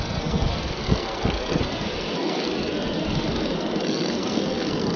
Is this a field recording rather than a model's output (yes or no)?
no